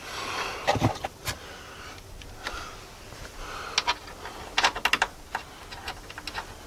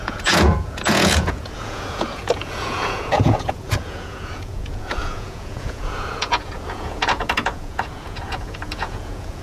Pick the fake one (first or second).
second